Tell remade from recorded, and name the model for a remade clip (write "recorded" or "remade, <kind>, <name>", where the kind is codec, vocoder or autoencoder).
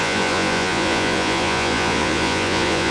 remade, vocoder, Vocos